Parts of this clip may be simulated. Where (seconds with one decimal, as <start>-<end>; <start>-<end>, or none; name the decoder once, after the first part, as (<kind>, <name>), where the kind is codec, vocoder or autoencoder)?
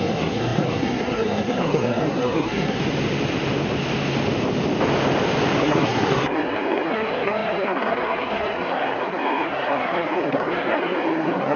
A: 0.0-2.8 (codec, SNAC); 5.6-11.6